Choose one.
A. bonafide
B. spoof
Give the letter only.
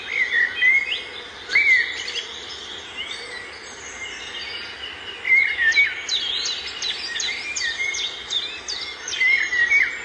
A